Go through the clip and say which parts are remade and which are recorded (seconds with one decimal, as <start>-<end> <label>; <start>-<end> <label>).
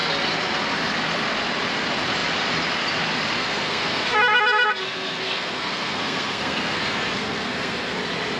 0.0-3.4 recorded; 3.4-8.0 remade; 8.0-8.4 recorded